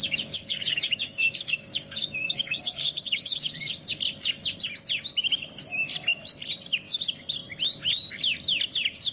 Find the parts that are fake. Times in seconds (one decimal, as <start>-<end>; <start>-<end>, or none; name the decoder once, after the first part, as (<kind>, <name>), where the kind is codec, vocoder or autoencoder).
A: 0.0-4.0 (codec, DAC)